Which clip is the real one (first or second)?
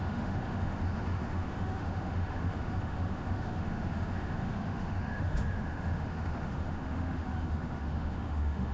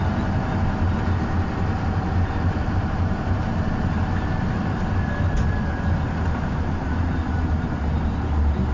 second